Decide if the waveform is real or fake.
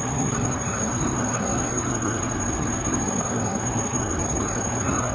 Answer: fake